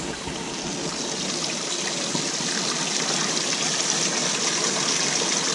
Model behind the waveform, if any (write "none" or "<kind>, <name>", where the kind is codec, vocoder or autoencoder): none